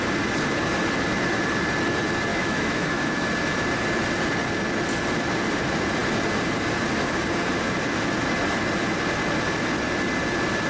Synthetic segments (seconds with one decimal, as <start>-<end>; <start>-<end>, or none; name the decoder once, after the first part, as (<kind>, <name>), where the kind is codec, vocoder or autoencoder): 2.3-3.3 (autoencoder, DAC-VAE)